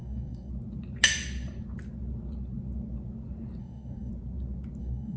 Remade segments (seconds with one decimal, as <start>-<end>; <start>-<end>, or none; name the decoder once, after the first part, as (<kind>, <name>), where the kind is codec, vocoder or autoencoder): 0.0-0.5 (codec, DAC); 3.6-4.1; 4.8-5.2